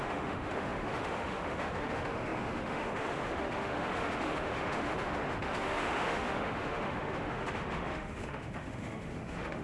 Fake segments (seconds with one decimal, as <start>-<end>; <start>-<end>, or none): 0.0-9.6